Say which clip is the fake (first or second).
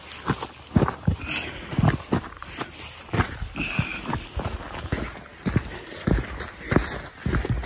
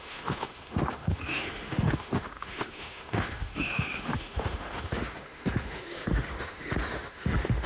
second